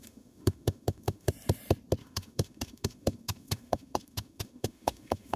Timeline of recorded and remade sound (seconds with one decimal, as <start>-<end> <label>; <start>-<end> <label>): 0.0-1.3 remade; 1.3-2.0 recorded; 2.0-5.4 remade